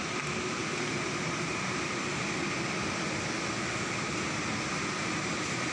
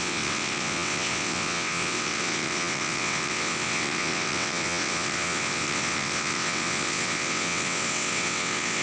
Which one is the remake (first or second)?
second